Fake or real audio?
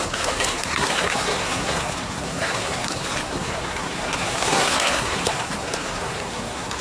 fake